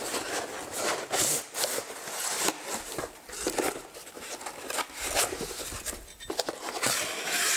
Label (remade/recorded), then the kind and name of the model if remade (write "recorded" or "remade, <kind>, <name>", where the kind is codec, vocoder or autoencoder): recorded